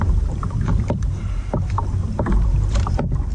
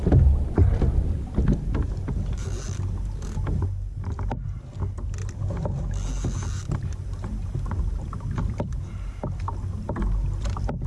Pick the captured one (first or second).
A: second